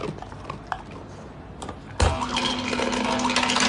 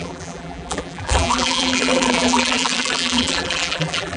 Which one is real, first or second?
first